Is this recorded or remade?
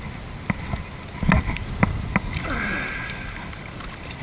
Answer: recorded